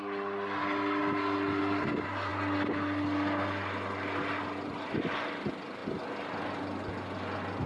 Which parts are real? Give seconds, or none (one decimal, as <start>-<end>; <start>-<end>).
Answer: 0.0-7.7